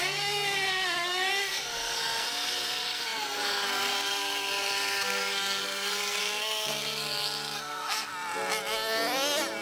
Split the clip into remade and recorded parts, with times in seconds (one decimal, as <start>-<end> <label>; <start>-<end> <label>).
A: 0.0-8.1 remade; 8.1-9.6 recorded